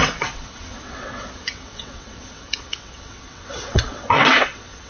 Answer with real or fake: fake